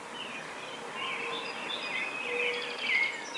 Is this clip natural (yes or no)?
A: yes